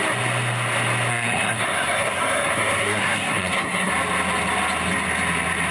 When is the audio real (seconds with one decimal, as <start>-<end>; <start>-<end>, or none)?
0.0-1.1; 3.9-5.7